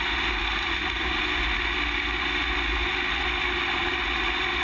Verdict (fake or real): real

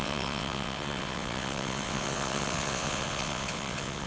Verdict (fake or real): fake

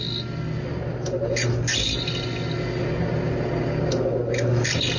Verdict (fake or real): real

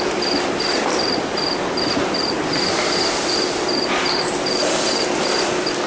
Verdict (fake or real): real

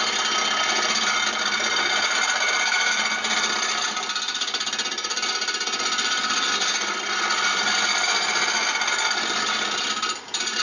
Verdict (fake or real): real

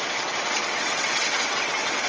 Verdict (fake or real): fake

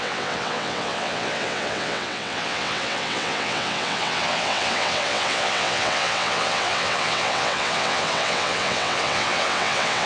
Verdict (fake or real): fake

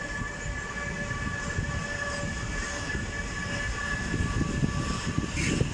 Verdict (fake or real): real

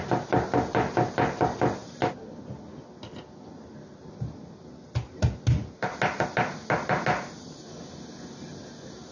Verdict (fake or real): real